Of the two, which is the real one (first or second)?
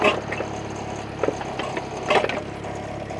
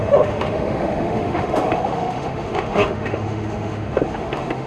first